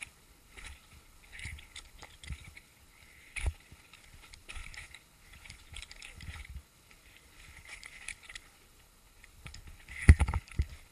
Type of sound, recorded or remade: remade